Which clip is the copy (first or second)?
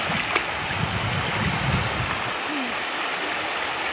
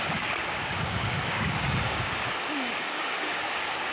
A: second